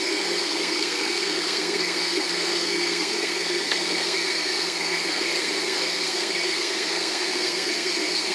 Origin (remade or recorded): remade